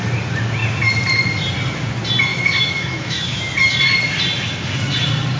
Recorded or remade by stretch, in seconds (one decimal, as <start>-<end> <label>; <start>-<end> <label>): 0.0-2.3 recorded; 2.3-3.4 remade; 3.4-5.4 recorded